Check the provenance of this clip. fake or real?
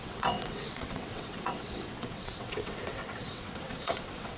fake